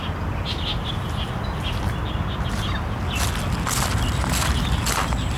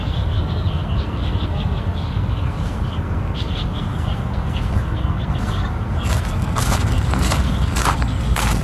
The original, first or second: first